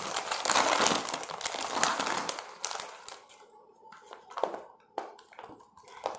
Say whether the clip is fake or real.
real